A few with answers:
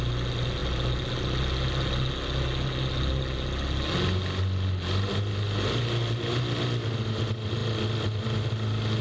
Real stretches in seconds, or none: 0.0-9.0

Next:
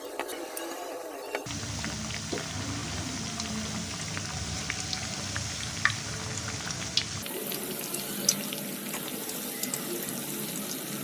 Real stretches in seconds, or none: 0.0-11.0